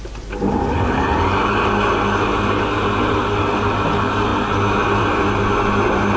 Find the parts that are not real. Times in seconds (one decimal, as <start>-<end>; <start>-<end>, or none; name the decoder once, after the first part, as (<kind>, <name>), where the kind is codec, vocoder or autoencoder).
none